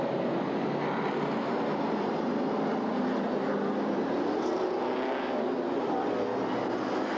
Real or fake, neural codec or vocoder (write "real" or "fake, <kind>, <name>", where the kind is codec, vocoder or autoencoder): real